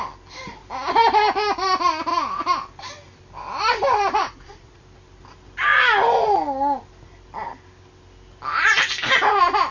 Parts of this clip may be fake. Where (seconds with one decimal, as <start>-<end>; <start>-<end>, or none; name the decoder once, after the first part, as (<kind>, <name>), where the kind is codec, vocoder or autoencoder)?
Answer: 4.2-4.8 (vocoder, Vocos)